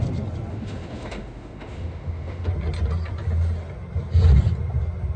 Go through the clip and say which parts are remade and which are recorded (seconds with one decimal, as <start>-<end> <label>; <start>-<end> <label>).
0.0-0.5 recorded; 0.5-2.5 remade; 2.5-5.2 recorded